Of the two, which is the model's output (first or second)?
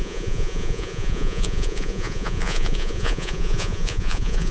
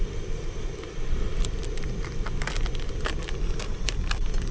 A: first